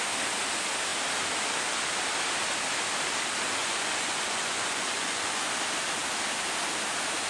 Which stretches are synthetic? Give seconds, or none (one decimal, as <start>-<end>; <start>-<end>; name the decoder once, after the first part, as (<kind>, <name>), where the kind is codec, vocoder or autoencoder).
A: 3.6-5.5 (vocoder, Vocos)